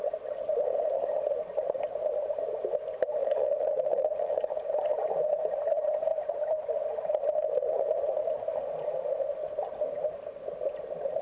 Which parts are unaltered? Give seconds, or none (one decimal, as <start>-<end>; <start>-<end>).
0.0-3.2; 4.4-11.2